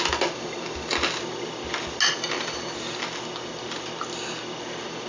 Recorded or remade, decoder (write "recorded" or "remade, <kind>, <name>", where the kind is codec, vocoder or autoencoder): recorded